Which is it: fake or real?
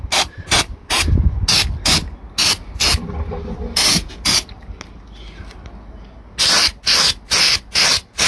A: real